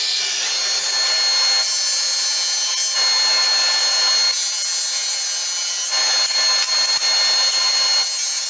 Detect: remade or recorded recorded